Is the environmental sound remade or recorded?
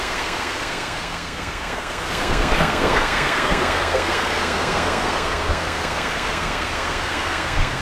remade